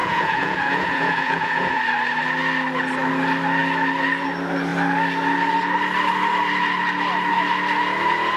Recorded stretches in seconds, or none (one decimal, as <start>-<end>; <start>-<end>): 1.8-8.4